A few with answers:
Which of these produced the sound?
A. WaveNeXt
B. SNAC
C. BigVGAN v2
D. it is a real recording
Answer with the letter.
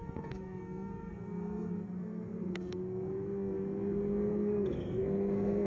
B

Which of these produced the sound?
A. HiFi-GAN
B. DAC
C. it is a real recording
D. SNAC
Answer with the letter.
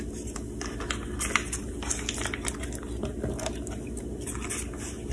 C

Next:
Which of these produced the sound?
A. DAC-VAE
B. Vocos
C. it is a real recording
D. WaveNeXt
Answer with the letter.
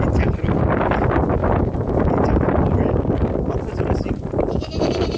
C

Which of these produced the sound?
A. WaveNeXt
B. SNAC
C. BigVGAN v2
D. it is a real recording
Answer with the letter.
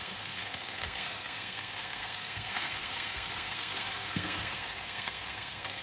B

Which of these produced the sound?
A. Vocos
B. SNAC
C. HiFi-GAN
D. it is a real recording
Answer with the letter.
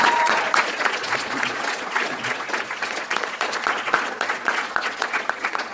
A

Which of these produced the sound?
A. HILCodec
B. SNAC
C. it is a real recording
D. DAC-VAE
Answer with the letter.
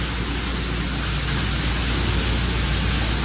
C